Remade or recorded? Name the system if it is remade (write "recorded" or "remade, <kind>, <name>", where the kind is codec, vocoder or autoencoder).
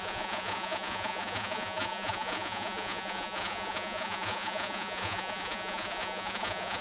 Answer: remade, vocoder, Vocos